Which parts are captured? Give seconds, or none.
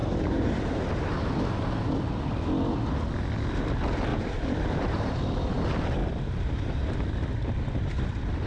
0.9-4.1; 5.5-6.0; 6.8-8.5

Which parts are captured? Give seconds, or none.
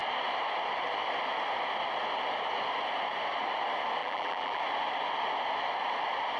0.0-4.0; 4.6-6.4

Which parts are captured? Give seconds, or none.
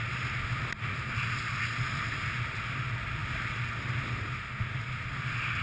0.0-3.2; 4.3-5.6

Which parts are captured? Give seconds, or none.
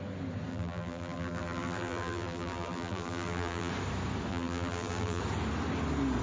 0.0-0.5; 3.7-4.3; 5.2-6.2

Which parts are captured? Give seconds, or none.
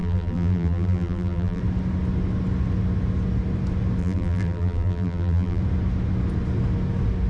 1.6-4.0; 5.6-7.3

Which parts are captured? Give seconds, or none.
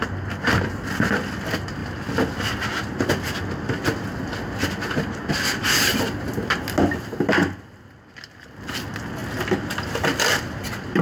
0.0-11.0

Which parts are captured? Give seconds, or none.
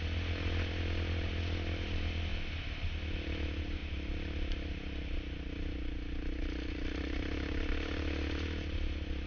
0.0-9.3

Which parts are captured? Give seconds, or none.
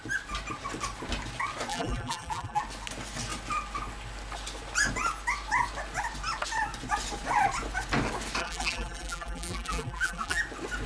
0.0-1.7; 2.6-8.4; 10.4-10.9